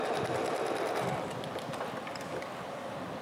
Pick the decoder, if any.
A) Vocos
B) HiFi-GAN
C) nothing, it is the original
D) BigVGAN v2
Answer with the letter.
C